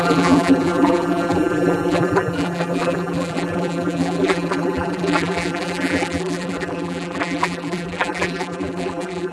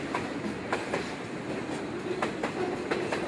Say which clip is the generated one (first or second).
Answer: first